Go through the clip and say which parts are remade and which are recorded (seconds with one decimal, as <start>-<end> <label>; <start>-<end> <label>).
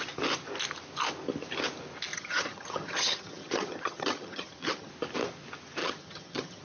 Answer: 0.0-2.1 recorded; 2.1-4.9 remade; 4.9-5.8 recorded; 5.8-6.6 remade